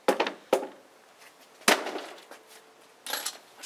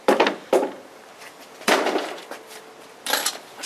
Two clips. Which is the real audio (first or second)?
first